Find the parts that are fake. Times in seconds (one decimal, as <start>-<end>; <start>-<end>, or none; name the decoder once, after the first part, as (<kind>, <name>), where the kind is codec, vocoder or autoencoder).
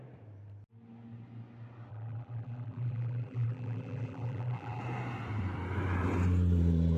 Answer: 1.9-4.8 (vocoder, BigVGAN v2)